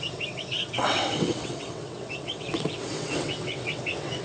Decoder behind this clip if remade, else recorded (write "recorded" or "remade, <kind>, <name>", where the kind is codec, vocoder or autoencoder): remade, vocoder, WaveNeXt